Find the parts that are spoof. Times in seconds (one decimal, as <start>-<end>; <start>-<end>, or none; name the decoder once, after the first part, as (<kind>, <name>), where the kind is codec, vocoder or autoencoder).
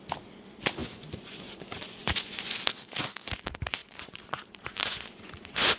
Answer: 0.8-2.6 (vocoder, Vocos); 3.8-5.8